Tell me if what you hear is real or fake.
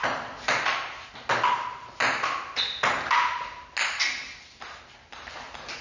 real